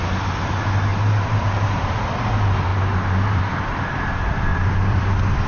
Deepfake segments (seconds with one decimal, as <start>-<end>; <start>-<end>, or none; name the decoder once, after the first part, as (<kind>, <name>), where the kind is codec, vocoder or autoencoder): 0.9-2.0 (vocoder, BigVGAN v2); 2.7-3.8; 4.5-5.0

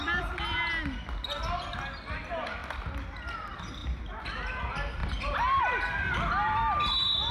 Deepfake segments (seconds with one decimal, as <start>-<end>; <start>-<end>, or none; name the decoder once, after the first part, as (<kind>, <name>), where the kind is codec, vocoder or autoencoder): 3.8-4.6 (vocoder, BigVGAN v2); 5.0-5.6

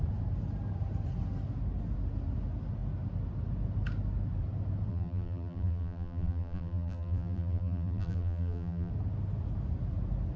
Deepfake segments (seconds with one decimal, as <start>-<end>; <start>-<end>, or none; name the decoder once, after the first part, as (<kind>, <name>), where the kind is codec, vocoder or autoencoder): 4.9-8.9 (vocoder, BigVGAN v2)

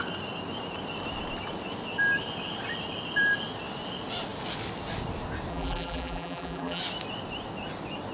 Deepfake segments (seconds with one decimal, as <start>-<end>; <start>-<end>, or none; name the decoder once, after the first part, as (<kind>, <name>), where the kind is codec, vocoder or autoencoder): 5.5-6.8 (vocoder, BigVGAN v2)

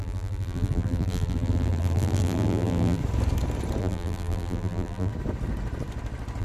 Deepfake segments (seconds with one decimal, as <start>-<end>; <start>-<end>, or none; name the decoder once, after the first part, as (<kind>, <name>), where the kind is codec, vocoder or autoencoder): 0.0-3.0 (vocoder, BigVGAN v2); 3.8-5.1

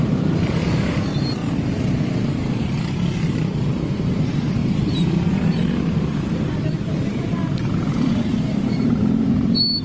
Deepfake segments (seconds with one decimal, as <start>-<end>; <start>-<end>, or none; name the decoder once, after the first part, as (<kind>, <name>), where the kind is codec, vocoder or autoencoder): 0.0-1.4 (vocoder, BigVGAN v2); 3.3-7.3; 7.8-9.8

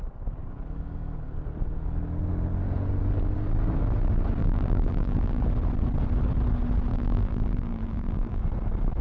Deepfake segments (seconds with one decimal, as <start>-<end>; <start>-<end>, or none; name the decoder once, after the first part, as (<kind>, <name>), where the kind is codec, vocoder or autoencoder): 4.4-5.4 (vocoder, BigVGAN v2); 6.9-8.4

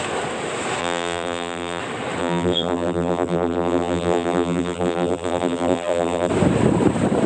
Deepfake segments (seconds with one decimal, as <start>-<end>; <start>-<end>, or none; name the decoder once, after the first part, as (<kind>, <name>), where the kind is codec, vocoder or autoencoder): 0.8-1.8 (vocoder, BigVGAN v2); 2.2-6.3